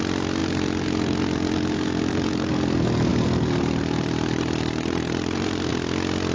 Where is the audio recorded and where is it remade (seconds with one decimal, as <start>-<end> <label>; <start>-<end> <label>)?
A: 0.0-0.4 recorded; 0.4-2.5 remade; 2.5-3.1 recorded; 3.1-5.7 remade; 5.7-6.3 recorded